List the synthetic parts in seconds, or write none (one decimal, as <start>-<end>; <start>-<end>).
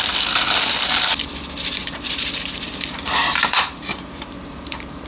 1.8-5.1